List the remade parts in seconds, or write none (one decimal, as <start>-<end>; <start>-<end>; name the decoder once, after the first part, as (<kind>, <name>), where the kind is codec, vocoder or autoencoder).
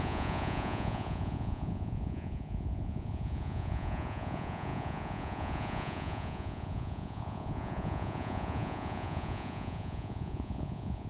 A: 0.0-11.1 (vocoder, Vocos)